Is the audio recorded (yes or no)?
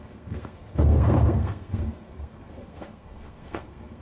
no